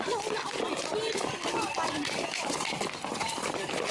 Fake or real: real